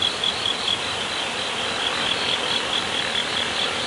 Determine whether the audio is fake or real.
real